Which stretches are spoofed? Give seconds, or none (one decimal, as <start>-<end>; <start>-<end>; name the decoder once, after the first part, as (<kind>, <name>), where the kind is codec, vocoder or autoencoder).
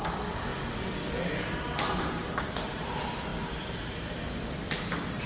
none